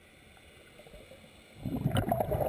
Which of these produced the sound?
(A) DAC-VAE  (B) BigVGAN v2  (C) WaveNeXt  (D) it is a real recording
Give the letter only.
D